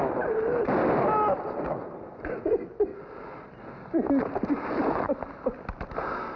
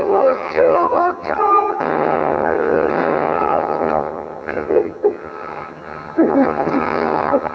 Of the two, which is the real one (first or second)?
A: first